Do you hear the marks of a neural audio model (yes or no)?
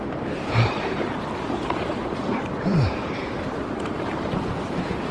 yes